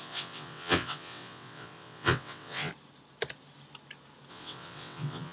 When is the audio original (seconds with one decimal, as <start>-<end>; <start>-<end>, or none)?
2.7-4.3